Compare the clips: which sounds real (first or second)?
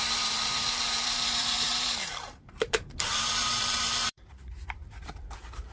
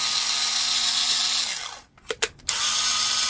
second